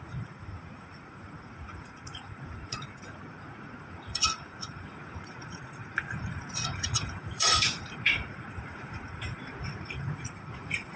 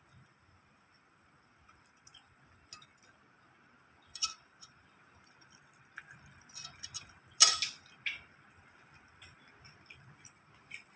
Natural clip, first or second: second